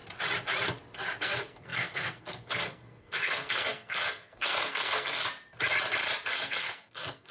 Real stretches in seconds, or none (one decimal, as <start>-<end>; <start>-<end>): 0.0-1.2; 5.2-6.3